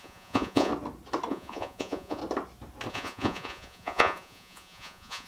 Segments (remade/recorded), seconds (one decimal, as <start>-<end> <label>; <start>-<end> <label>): 0.0-0.7 remade; 0.7-1.3 recorded; 1.3-2.2 remade; 2.2-2.9 recorded; 2.9-5.3 remade